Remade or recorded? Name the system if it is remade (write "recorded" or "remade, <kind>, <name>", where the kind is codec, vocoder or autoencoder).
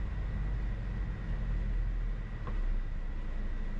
recorded